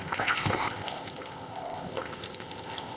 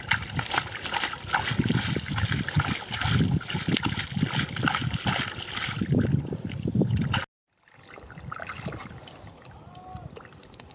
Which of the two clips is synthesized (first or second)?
first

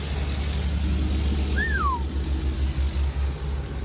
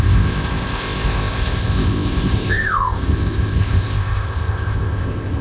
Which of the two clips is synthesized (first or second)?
second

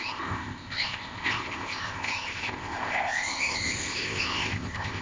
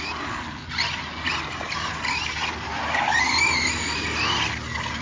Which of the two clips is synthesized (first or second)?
first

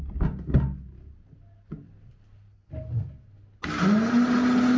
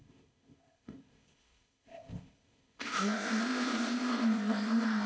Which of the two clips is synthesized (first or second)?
second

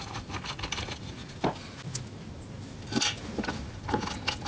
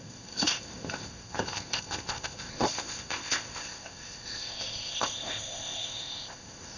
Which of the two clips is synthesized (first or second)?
second